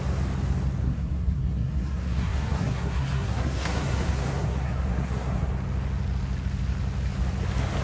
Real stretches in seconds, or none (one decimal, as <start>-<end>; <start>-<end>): 0.0-0.8; 5.5-7.8